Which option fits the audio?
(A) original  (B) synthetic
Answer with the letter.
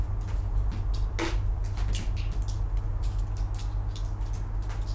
A